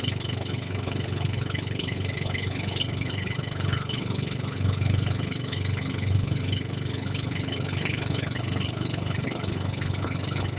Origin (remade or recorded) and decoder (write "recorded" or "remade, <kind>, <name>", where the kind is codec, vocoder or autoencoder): remade, codec, HILCodec